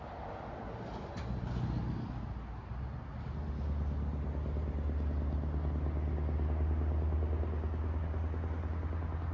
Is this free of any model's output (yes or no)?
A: yes